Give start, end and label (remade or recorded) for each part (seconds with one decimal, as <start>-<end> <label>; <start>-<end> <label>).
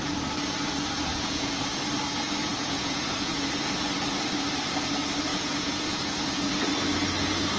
0.0-1.1 recorded; 1.1-1.6 remade; 1.6-2.5 recorded; 2.5-3.5 remade; 3.5-5.3 recorded; 5.3-6.7 remade; 6.7-7.6 recorded